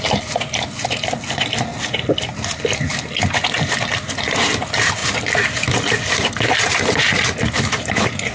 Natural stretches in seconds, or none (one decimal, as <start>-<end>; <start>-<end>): 0.0-8.3